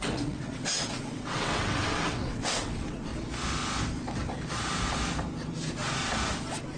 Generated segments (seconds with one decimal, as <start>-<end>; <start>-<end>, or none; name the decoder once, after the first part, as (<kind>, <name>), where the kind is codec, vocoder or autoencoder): 0.0-3.1 (vocoder, WaveNeXt)